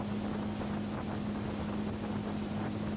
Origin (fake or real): real